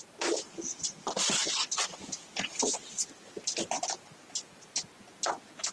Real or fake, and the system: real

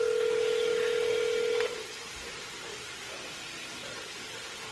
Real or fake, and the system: real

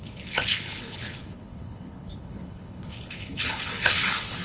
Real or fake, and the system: fake, codec, HILCodec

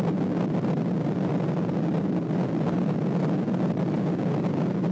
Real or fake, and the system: real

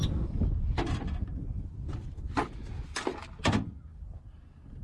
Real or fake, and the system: real